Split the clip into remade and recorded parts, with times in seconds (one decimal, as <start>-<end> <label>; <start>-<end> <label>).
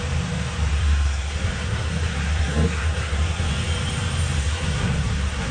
0.0-0.7 recorded; 0.7-3.5 remade; 3.5-4.4 recorded; 4.4-5.5 remade